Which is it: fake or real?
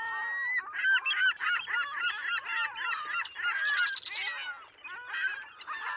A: real